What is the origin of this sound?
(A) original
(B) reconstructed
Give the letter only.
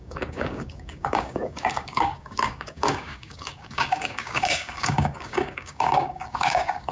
B